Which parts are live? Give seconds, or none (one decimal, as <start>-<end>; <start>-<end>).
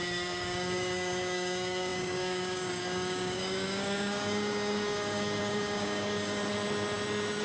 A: 6.4-7.4